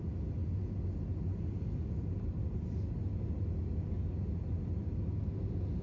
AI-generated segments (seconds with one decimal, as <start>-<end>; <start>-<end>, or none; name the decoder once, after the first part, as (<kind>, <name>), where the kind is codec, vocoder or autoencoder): none